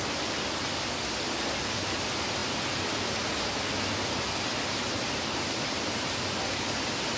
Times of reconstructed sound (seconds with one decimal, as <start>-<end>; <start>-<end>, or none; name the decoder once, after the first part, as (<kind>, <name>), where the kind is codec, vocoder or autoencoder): none